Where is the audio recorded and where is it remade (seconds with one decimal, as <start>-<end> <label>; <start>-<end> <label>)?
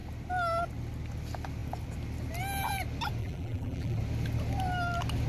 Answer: 0.0-3.2 recorded; 3.2-4.0 remade; 4.0-5.3 recorded